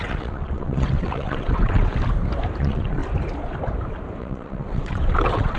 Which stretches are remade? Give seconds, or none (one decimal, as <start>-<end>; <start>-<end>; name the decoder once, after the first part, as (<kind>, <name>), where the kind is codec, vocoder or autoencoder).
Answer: 0.0-1.9 (vocoder, WaveNeXt); 2.6-3.0; 4.2-5.6

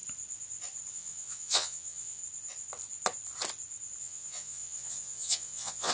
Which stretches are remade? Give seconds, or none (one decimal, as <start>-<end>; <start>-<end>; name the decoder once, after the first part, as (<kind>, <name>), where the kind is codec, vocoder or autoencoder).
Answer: 0.9-2.2 (vocoder, Vocos); 4.0-5.9